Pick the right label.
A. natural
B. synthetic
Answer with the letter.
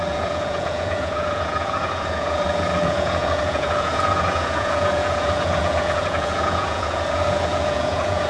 B